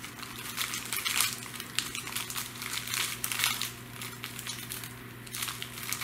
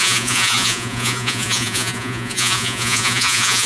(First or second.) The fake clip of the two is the second